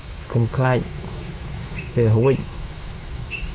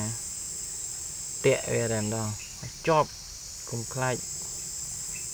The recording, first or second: second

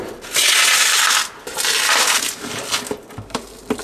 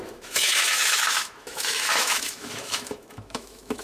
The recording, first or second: first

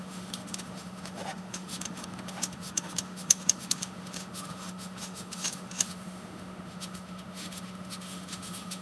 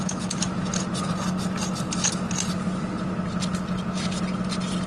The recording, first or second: second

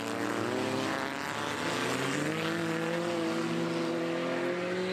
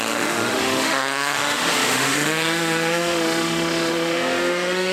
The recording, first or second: first